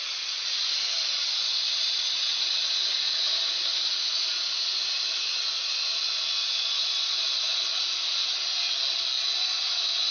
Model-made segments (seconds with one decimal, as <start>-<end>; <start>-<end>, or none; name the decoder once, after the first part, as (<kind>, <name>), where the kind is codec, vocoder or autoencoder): 0.0-8.3 (vocoder, Vocos); 9.4-10.1